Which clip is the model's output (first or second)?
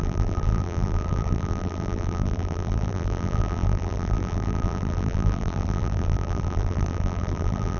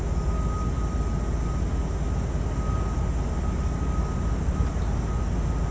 first